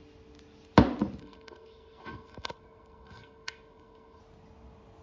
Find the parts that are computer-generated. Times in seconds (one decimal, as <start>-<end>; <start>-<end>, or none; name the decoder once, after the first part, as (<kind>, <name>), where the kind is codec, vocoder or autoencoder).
1.2-4.2 (codec, SNAC)